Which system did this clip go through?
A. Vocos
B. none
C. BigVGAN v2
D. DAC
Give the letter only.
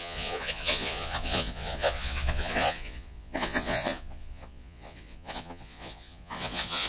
A